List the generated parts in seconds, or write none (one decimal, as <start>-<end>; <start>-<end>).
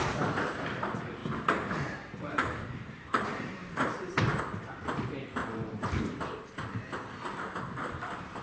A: 1.2-4.4; 5.4-5.9